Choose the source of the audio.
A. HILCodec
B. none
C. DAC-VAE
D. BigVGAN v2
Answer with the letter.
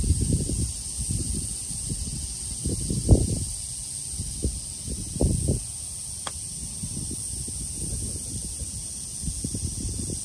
B